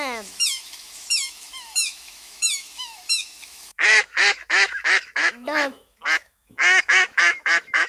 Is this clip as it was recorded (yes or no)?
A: no